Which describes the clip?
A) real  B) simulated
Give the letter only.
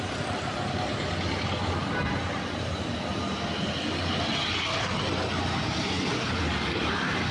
A